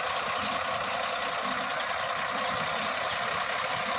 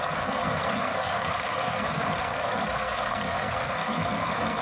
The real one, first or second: first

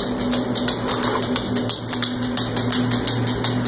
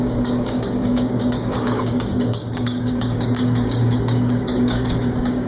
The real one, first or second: first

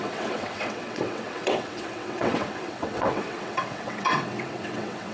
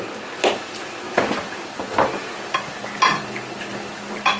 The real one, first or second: second